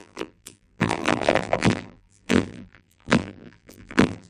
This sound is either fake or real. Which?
fake